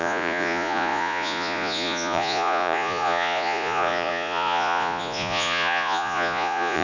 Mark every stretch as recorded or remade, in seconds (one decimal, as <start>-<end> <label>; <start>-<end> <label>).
0.0-6.8 remade

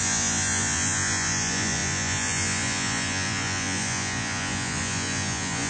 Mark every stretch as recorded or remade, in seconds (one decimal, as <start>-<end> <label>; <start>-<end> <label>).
0.0-5.7 remade